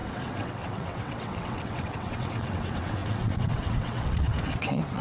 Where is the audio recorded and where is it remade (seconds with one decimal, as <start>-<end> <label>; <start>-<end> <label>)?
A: 0.0-5.0 remade

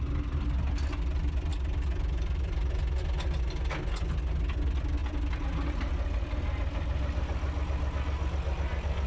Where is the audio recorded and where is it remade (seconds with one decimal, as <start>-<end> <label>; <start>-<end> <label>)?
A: 0.0-9.1 recorded

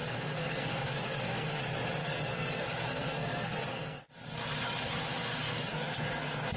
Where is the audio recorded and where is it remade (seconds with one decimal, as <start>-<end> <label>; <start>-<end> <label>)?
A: 0.0-1.6 remade; 1.6-2.0 recorded; 2.0-4.0 remade; 4.0-5.7 recorded; 5.7-6.6 remade